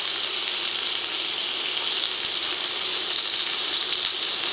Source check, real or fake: real